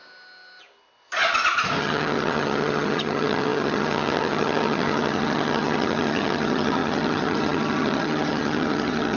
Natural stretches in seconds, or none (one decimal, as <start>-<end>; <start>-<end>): 0.0-1.8

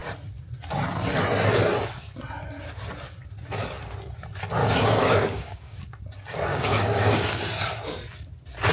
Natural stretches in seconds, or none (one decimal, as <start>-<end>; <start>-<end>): 0.0-4.6; 5.8-6.5; 7.4-8.7

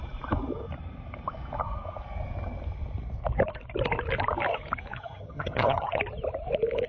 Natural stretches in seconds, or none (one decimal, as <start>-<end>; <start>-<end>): 0.0-4.9; 6.0-6.9